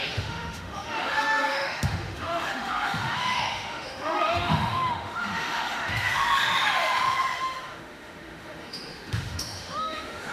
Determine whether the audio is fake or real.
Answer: fake